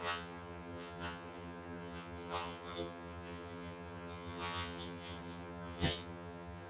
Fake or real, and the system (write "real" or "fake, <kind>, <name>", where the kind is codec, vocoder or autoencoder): fake, vocoder, HiFi-GAN